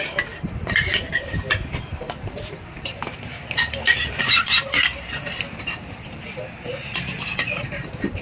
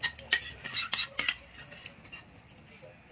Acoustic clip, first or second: second